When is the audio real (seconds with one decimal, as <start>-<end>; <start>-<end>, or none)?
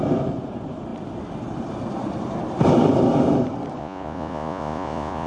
0.0-3.8